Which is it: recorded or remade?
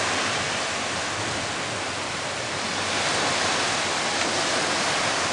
recorded